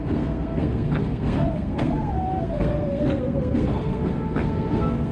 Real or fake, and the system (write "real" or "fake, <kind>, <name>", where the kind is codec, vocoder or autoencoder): fake, codec, SNAC